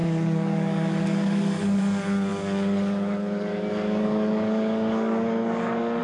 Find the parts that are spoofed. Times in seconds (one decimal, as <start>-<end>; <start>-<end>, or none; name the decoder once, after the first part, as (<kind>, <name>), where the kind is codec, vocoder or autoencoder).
0.0-6.0 (codec, DAC)